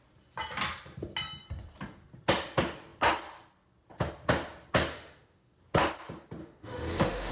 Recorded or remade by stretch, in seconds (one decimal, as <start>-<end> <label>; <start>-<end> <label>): 0.0-4.9 recorded; 4.9-5.5 remade; 5.5-6.4 recorded; 6.4-7.3 remade

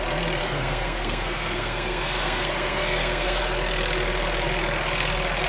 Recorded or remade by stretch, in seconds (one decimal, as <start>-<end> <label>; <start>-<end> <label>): 0.0-0.4 recorded; 0.4-3.4 remade; 3.4-5.5 recorded

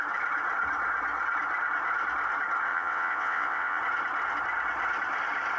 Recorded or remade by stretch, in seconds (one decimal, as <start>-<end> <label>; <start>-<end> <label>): 0.0-2.7 recorded; 2.7-3.8 remade; 3.8-5.6 recorded

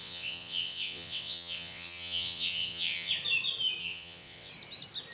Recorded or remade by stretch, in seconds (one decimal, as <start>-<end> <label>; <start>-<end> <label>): 0.0-3.1 remade; 3.1-3.8 recorded; 3.8-4.5 remade; 4.5-5.1 recorded

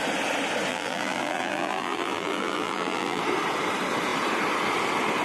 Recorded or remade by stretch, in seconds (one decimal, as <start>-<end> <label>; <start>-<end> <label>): 0.0-0.7 recorded; 0.7-3.2 remade; 3.2-5.2 recorded